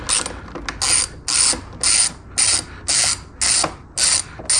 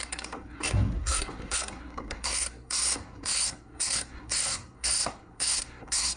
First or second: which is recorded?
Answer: first